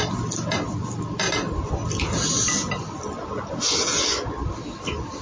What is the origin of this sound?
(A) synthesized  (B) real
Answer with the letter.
B